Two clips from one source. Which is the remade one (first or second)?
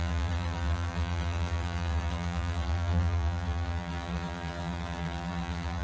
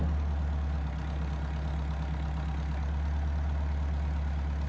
first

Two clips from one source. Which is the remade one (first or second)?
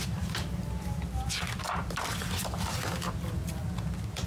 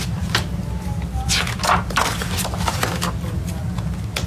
first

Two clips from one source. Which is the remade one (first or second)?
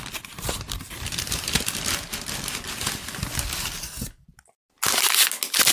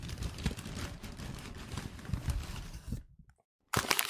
second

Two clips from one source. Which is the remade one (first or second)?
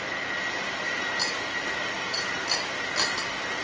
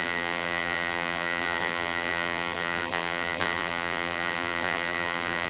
second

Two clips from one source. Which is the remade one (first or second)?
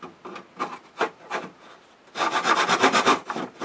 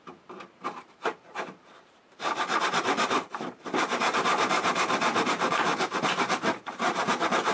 second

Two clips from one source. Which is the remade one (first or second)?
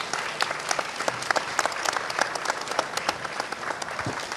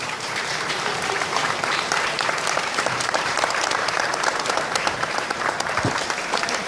second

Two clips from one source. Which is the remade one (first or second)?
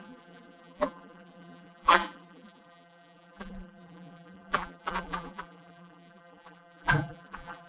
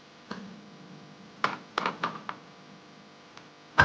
first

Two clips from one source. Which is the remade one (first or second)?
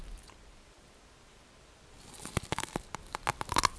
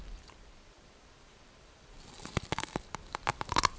second